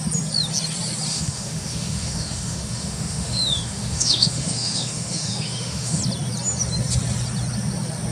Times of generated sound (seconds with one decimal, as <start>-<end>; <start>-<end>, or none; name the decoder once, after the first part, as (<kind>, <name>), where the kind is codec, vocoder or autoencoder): 1.1-6.0 (autoencoder, DAC-VAE)